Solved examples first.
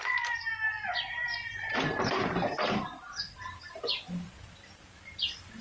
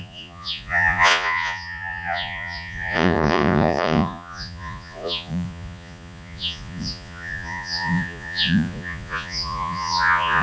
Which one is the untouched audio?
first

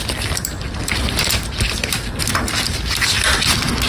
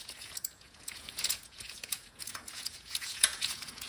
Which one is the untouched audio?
first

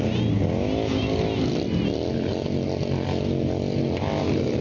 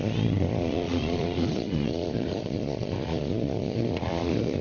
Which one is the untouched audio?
first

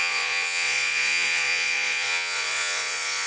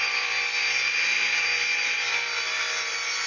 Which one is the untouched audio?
second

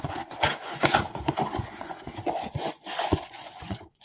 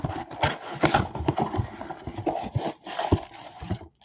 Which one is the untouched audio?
second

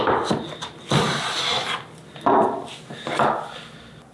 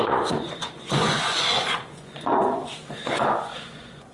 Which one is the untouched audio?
first